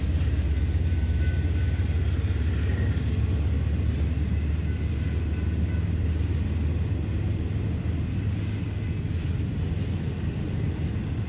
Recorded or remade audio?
recorded